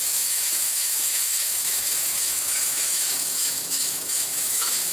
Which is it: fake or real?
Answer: fake